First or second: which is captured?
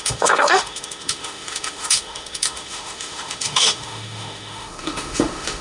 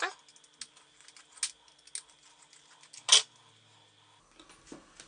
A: second